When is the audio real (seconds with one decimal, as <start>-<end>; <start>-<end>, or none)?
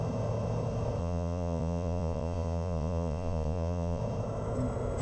0.0-1.0; 4.0-5.0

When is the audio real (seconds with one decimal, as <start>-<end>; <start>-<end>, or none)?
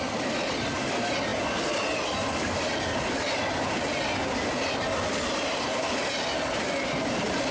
1.3-5.8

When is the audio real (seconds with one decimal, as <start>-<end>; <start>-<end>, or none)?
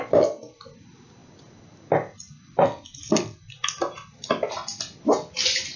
0.0-5.8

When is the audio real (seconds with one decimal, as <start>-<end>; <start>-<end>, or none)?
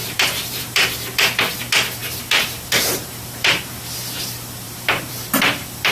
1.4-2.0; 5.1-5.9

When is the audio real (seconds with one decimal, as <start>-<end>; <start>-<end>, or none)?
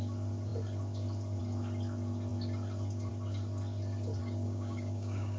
0.0-4.2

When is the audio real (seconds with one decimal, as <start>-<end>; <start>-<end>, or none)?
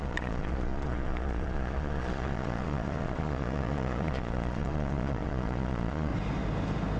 6.1-7.0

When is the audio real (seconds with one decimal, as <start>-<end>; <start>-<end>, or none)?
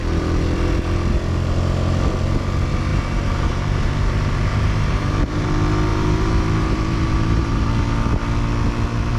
0.0-2.9; 5.5-5.9; 7.7-9.2